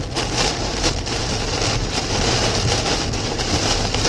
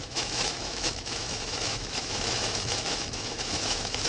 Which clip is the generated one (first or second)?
second